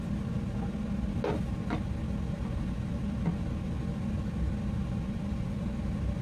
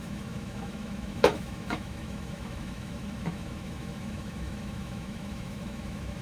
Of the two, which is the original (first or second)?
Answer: first